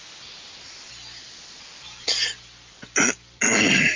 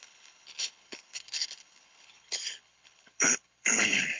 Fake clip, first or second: second